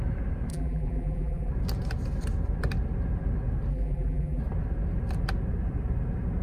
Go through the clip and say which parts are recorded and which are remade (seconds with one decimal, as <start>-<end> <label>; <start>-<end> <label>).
0.0-0.5 recorded; 0.5-1.5 remade; 1.5-3.7 recorded; 3.7-4.4 remade; 4.4-6.4 recorded